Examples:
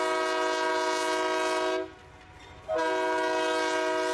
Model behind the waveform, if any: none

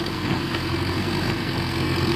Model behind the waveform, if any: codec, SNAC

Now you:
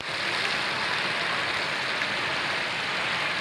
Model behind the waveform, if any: none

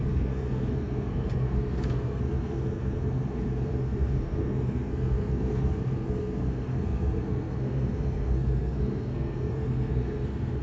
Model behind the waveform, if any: codec, SNAC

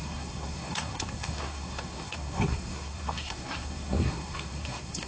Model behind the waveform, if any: codec, SNAC